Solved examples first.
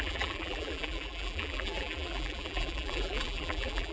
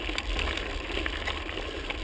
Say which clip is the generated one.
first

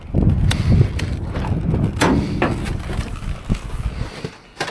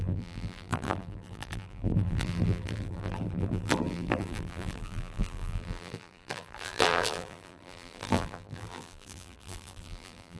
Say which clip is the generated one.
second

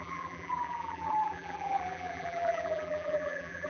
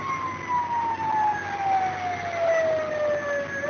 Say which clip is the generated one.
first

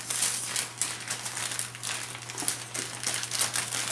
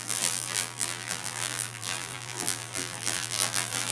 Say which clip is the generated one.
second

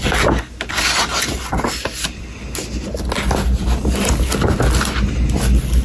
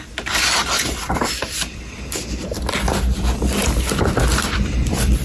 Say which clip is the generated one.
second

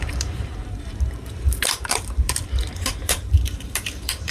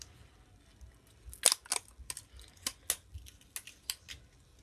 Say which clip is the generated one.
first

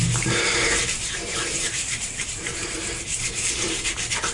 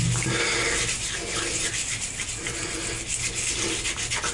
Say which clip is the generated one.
first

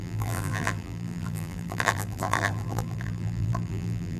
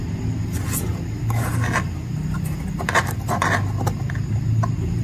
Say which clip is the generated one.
first